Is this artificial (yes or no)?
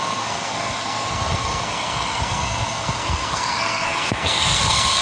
yes